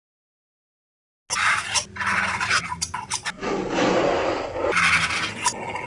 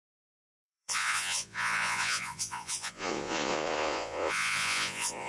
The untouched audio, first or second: first